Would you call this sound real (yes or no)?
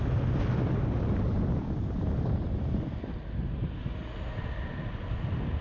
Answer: yes